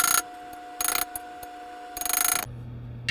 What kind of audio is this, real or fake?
real